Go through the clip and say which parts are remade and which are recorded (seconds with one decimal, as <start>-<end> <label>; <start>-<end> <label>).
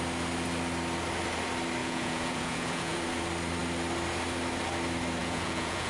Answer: 0.0-1.8 recorded; 1.8-3.0 remade; 3.0-5.2 recorded; 5.2-5.9 remade